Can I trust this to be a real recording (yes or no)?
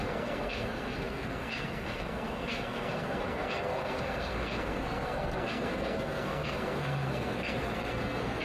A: no